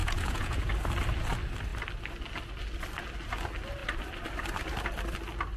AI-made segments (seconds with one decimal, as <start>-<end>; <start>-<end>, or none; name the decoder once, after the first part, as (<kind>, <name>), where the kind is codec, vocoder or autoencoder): 0.0-0.7 (vocoder, Vocos)